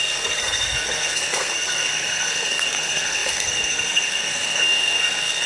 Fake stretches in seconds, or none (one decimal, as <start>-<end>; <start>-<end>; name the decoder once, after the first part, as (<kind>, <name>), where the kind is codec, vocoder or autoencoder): 0.0-5.5 (codec, SNAC)